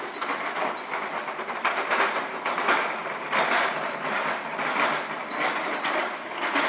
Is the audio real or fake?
real